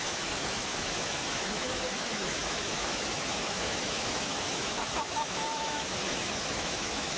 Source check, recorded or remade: remade